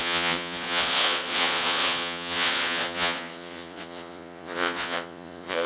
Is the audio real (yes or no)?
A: no